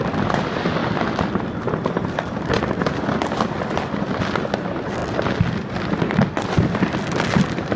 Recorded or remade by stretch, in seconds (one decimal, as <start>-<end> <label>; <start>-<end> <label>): 0.0-7.8 recorded